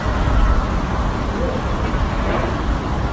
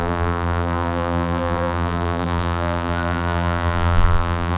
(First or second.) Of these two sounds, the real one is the first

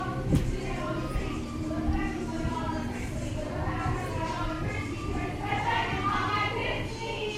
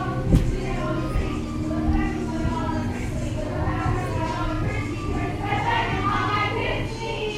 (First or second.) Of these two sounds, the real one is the second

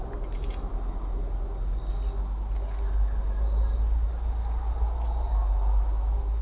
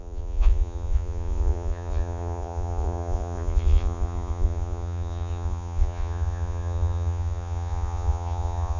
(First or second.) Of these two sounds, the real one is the first